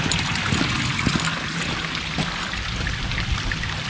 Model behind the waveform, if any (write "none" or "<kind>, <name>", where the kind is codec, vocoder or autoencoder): none